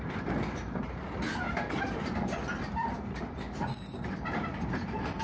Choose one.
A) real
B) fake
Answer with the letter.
B